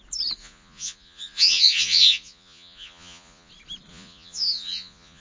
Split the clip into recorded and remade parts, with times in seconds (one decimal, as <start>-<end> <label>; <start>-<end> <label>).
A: 0.0-0.4 recorded; 0.4-3.5 remade; 3.5-3.9 recorded; 3.9-5.2 remade